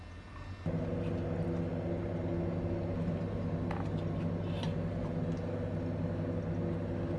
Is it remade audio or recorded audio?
recorded